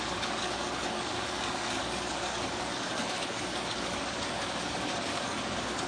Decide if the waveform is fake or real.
fake